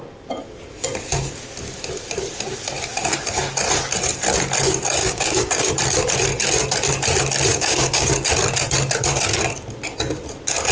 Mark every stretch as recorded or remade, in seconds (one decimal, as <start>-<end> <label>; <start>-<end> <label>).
0.0-5.0 recorded; 5.0-5.7 remade; 5.7-7.5 recorded; 7.5-8.1 remade; 8.1-10.7 recorded